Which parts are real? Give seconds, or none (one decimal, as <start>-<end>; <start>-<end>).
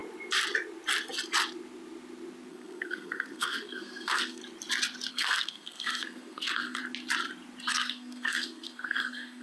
0.0-2.5; 4.4-5.1; 6.8-7.7